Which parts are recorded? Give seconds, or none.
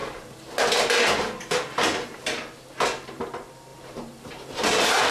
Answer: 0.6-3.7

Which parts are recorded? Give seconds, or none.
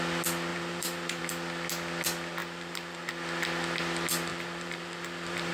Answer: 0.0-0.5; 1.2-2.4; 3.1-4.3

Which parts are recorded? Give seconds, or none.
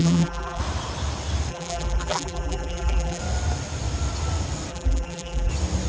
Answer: 0.6-1.5; 3.2-4.7; 5.5-5.9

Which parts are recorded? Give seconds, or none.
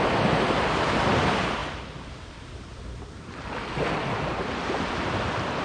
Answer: 0.0-5.6